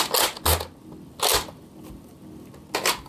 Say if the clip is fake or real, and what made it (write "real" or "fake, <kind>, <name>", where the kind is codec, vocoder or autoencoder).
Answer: real